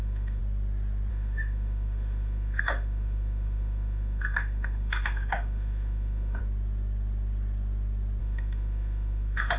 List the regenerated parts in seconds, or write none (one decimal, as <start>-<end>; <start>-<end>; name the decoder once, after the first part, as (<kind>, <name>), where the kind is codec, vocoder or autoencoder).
0.0-0.4 (autoencoder, DAC-VAE); 1.1-6.4; 8.2-9.6